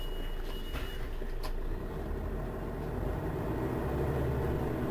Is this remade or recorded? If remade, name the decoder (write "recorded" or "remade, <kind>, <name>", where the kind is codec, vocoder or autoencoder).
recorded